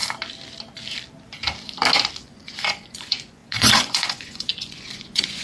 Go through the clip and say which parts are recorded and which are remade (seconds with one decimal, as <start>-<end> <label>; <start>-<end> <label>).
0.0-2.2 recorded; 2.2-5.4 remade